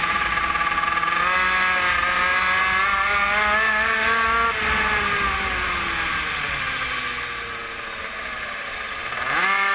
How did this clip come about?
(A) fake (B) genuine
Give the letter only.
B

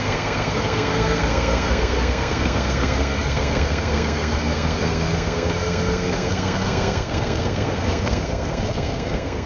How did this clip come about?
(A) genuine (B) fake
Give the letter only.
B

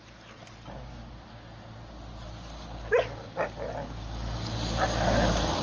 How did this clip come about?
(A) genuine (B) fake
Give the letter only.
A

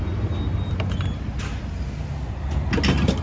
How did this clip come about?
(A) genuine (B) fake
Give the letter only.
A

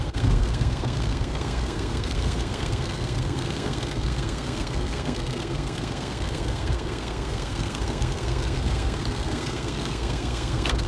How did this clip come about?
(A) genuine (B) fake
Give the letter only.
B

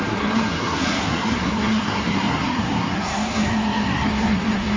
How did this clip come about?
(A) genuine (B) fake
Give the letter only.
B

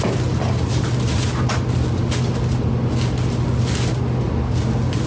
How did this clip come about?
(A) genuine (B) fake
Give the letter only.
A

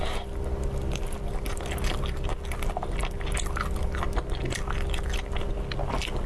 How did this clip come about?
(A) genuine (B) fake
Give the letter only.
A